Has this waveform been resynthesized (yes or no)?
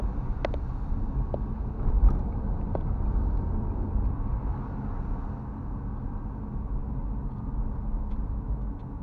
no